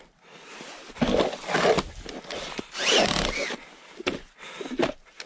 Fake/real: real